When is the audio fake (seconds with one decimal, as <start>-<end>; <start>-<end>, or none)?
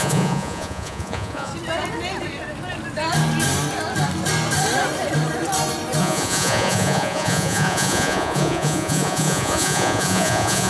0.0-1.5; 6.0-10.7